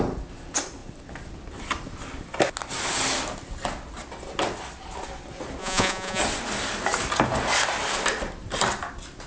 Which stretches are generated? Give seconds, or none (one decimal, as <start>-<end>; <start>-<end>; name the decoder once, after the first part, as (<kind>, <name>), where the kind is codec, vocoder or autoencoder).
5.6-6.2 (vocoder, Vocos)